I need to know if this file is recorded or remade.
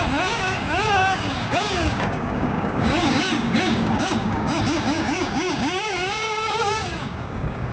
remade